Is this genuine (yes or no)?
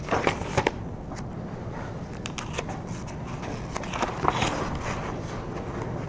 yes